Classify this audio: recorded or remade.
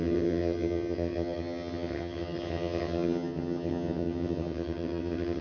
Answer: remade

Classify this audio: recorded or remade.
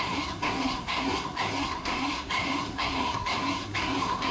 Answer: remade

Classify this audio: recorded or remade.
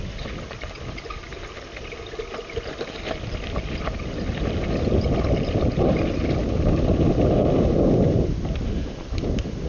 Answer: recorded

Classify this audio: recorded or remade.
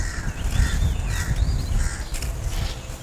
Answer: recorded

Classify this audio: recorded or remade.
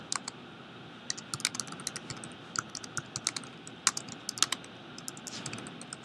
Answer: recorded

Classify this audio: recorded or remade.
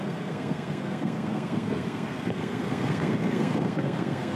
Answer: remade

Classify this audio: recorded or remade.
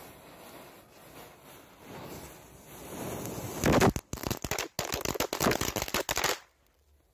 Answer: recorded